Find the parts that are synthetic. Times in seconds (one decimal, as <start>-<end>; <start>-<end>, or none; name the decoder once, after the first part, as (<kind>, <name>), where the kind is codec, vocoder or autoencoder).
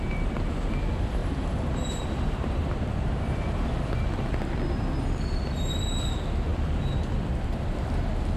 0.0-8.4 (vocoder, BigVGAN v2)